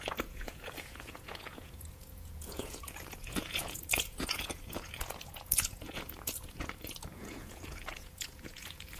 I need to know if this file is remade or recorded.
remade